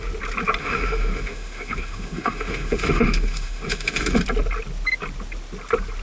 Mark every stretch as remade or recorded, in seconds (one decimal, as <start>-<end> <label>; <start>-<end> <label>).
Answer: 0.0-0.6 recorded; 0.6-4.2 remade; 4.2-6.0 recorded